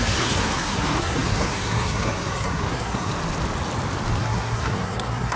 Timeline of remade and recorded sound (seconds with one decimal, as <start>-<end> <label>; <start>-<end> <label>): 0.0-3.1 remade; 3.1-4.2 recorded; 4.2-5.4 remade